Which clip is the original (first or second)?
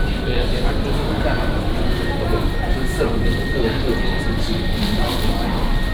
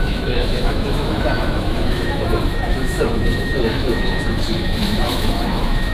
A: first